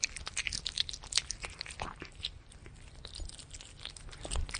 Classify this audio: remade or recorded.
recorded